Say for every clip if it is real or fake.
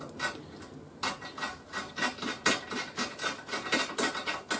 real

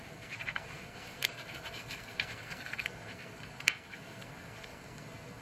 fake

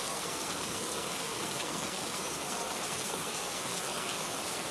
fake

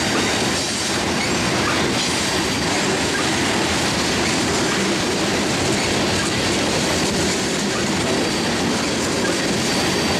real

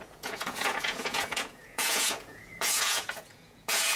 fake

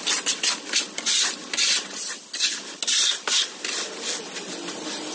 real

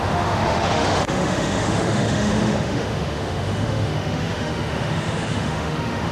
fake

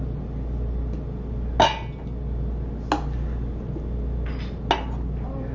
real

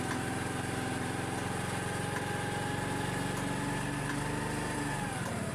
real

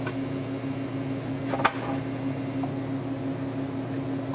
real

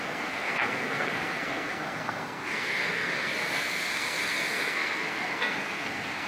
fake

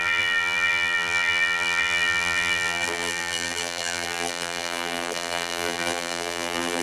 fake